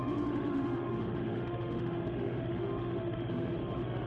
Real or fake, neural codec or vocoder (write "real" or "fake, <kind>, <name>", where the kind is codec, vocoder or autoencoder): fake, autoencoder, DAC-VAE